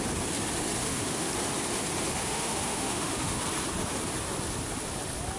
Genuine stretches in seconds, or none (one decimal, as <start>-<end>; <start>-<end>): 0.0-0.8; 1.3-2.2; 3.4-5.4